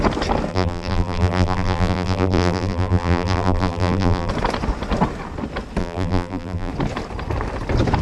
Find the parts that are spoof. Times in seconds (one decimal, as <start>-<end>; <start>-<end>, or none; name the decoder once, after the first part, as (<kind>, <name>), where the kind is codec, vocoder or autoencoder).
0.5-4.3 (vocoder, BigVGAN v2); 5.8-6.7